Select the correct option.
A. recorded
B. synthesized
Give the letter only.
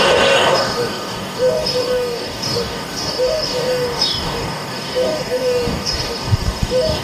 B